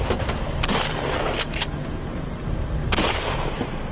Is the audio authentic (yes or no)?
yes